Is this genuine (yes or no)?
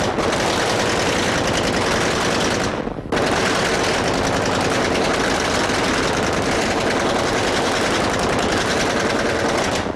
yes